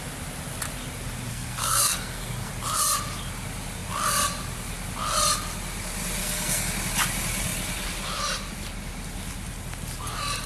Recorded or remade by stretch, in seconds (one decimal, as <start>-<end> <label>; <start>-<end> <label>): 0.0-1.3 recorded; 1.3-2.5 remade; 2.5-6.2 recorded; 6.2-6.7 remade; 6.7-10.5 recorded